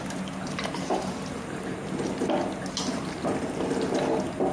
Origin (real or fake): real